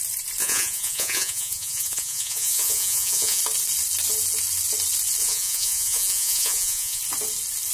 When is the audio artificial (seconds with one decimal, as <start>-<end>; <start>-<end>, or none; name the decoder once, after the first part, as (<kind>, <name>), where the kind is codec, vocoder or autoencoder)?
0.4-3.4 (vocoder, Vocos); 5.2-7.0